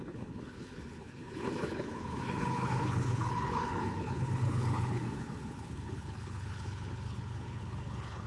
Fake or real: fake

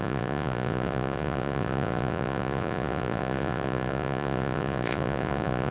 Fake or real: fake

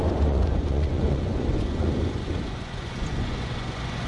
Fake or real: fake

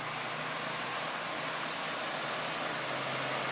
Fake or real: real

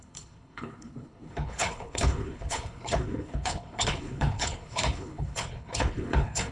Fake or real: fake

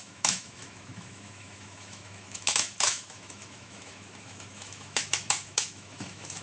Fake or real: fake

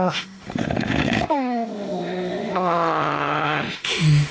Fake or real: fake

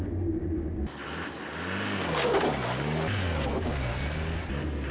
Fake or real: real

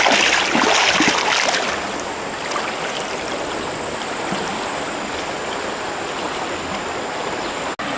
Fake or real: real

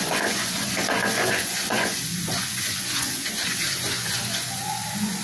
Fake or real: fake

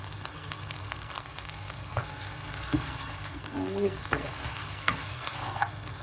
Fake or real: fake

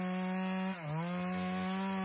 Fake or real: real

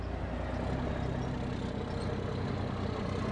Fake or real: real